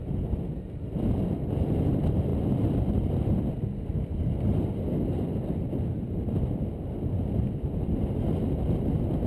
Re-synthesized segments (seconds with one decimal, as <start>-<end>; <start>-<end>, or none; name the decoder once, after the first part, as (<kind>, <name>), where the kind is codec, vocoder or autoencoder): 2.3-3.5 (vocoder, BigVGAN v2)